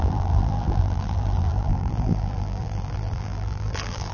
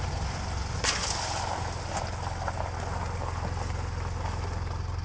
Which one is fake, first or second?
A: first